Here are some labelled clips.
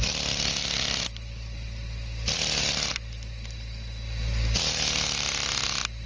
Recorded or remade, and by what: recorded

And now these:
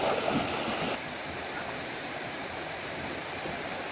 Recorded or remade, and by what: recorded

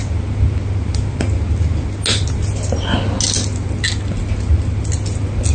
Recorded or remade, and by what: recorded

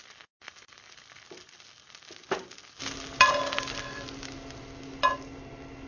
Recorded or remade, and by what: recorded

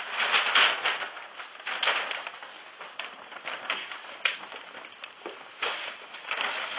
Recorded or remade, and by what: remade, vocoder, BigVGAN v2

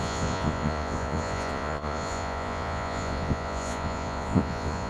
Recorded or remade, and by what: remade, vocoder, Vocos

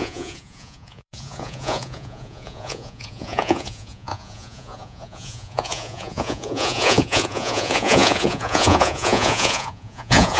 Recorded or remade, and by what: remade, vocoder, Vocos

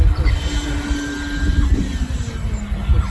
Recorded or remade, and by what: recorded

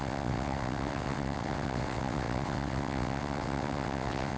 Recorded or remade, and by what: remade, vocoder, WaveNeXt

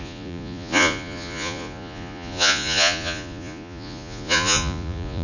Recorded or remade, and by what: remade, vocoder, Vocos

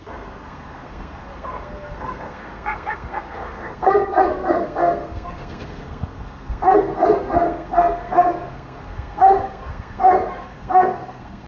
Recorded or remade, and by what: remade, codec, SNAC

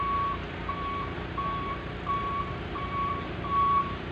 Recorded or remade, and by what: remade, vocoder, BigVGAN v2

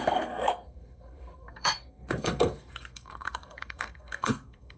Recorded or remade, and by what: remade, codec, SNAC